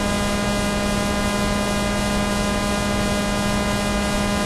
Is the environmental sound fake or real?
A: real